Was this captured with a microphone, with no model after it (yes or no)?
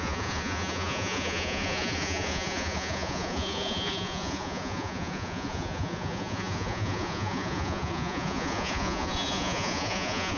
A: no